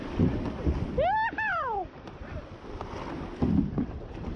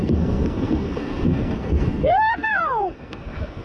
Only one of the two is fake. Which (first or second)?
second